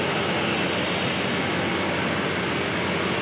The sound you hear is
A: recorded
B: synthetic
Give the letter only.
A